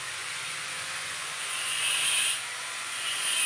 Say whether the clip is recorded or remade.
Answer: remade